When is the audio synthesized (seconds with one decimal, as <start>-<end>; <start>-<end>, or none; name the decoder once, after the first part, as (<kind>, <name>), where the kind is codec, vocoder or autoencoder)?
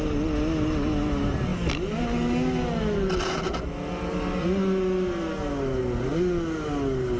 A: none